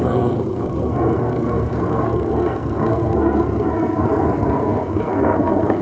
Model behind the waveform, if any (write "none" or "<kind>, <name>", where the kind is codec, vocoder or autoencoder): codec, SNAC